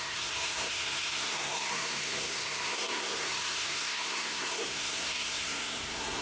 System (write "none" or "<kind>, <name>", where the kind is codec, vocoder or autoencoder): codec, SNAC